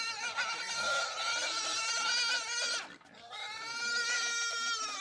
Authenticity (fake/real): real